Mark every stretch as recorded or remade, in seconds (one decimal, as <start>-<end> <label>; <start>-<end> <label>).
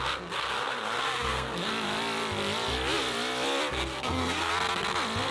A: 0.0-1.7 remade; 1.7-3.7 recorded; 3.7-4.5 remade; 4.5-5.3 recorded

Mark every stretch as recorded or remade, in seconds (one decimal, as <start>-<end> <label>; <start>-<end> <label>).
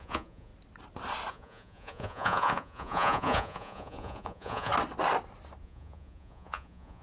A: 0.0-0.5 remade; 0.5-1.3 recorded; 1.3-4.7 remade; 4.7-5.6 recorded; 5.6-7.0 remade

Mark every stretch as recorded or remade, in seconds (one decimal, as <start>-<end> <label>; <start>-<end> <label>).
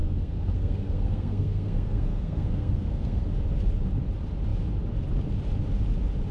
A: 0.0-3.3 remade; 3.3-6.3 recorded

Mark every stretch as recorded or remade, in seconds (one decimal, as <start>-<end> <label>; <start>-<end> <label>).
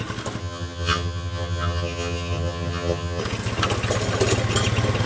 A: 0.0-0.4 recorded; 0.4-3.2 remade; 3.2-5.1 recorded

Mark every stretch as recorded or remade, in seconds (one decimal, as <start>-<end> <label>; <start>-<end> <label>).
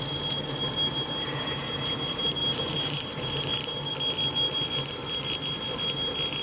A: 0.0-2.4 recorded; 2.4-3.9 remade; 3.9-6.4 recorded